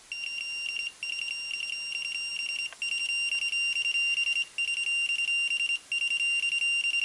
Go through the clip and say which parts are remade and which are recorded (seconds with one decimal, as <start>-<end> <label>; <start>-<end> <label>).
0.0-7.0 recorded